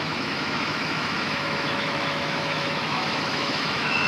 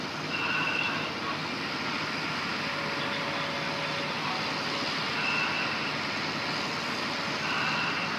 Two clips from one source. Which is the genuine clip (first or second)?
second